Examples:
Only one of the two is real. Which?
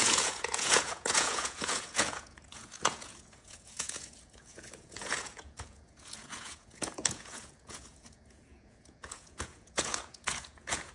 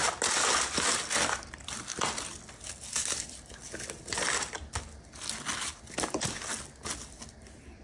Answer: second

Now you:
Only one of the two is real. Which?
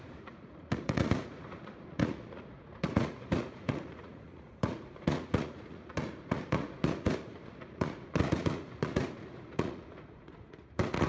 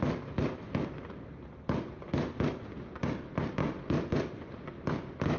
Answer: second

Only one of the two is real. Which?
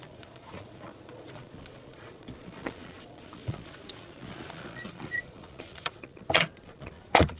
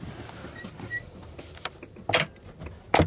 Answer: second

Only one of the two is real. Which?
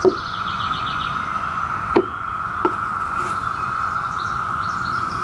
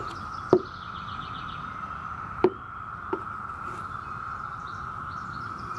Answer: second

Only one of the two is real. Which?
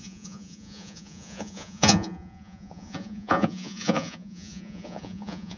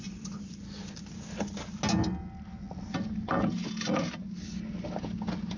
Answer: second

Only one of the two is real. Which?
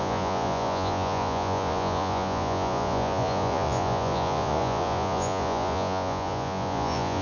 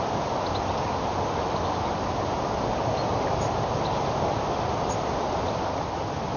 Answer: second